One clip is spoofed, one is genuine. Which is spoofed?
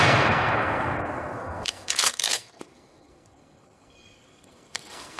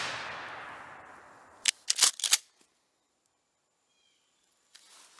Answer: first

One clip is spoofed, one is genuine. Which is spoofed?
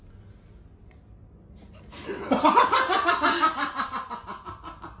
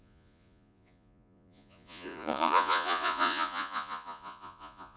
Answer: second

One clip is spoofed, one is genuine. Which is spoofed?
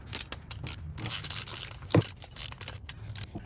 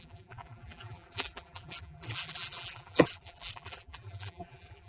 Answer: second